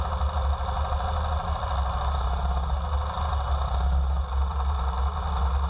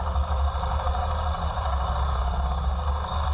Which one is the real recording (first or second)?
first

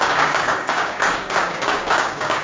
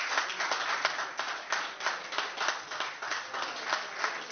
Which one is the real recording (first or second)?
second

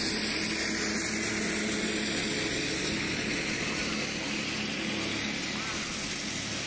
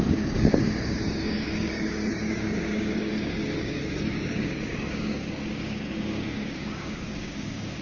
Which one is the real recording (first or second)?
first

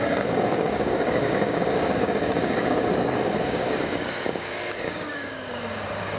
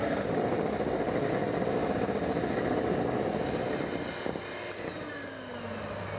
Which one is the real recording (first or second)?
second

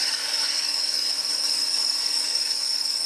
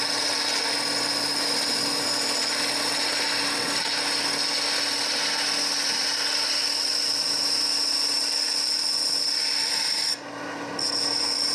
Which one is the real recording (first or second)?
second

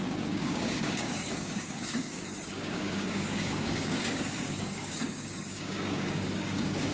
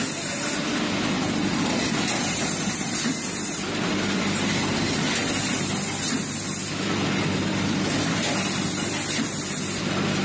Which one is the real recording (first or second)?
second